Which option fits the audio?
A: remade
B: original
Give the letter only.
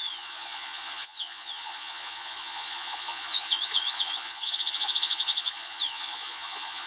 A